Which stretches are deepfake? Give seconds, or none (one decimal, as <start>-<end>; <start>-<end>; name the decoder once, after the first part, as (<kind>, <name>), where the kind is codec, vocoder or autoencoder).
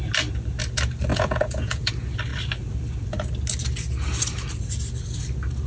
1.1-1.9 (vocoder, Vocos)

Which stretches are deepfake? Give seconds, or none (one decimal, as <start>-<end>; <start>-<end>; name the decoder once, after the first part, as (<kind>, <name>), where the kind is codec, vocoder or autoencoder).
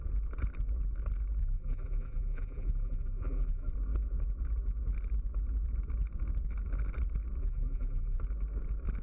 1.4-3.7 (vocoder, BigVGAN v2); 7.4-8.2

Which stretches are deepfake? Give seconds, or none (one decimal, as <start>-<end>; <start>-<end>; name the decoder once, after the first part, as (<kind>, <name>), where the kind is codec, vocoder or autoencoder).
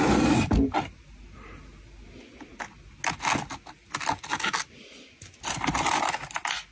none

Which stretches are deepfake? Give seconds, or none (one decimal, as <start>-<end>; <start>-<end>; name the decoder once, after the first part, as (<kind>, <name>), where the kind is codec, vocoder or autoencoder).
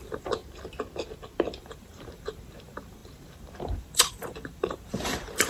0.0-0.4 (vocoder, BigVGAN v2); 1.6-5.5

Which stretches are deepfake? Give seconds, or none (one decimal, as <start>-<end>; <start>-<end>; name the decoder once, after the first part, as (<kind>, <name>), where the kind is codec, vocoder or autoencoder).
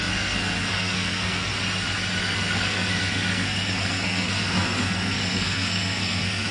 0.0-1.5 (codec, SNAC); 2.2-6.5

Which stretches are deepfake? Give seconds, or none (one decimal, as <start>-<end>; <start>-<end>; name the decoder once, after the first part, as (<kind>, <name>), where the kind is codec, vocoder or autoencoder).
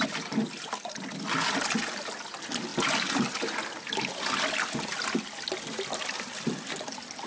none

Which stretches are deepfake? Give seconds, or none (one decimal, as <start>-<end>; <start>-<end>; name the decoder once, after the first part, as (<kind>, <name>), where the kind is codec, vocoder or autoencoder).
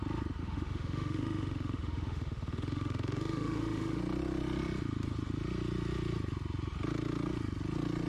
0.4-4.0 (autoencoder, DAC-VAE)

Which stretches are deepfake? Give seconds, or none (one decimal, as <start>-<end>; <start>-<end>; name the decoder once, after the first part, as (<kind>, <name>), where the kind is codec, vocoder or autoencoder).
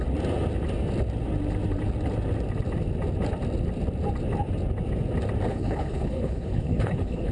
5.5-7.3 (codec, HILCodec)